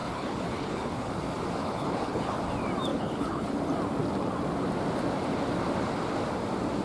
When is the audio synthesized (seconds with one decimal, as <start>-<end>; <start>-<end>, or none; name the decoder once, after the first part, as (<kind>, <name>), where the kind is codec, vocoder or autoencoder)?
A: 0.0-1.1 (codec, HILCodec); 1.6-2.4; 2.9-3.5